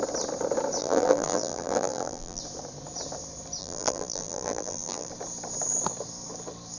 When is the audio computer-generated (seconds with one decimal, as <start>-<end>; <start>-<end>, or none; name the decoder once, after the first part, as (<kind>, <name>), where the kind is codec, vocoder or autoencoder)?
0.8-2.4 (vocoder, BigVGAN v2); 3.6-5.1